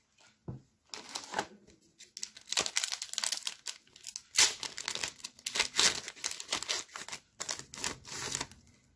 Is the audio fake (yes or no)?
no